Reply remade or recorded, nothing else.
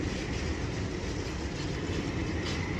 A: recorded